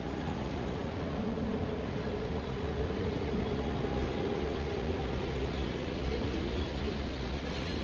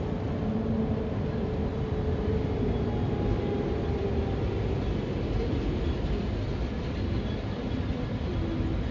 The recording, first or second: second